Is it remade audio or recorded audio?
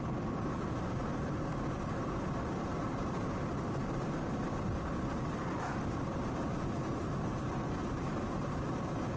remade